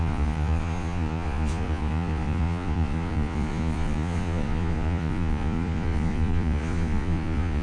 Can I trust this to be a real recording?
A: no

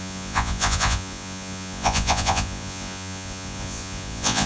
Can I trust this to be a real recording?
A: no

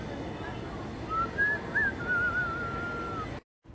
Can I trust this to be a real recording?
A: yes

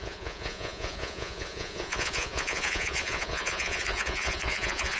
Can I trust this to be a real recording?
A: no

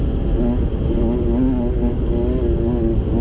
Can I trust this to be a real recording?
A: yes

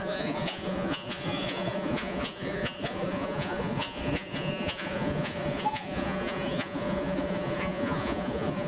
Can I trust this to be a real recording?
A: no